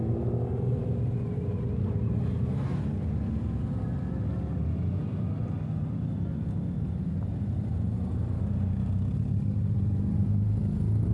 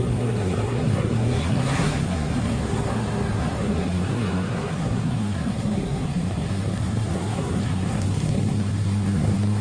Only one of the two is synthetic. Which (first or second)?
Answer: second